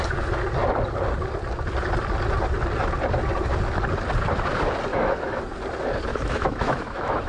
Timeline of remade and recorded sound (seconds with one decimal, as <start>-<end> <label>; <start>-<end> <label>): 0.0-4.9 recorded; 4.9-5.4 remade; 5.4-6.1 recorded; 6.1-7.3 remade